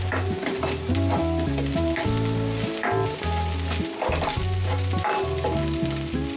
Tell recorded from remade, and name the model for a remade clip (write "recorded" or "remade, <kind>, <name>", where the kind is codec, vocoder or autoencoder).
recorded